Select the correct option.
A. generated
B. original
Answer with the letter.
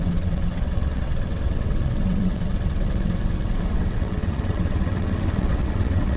A